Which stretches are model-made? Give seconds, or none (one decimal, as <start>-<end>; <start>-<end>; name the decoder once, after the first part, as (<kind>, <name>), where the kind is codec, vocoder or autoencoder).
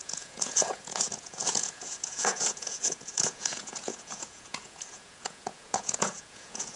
0.0-6.8 (vocoder, Vocos)